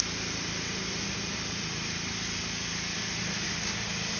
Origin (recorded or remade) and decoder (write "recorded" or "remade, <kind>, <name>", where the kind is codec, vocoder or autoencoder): recorded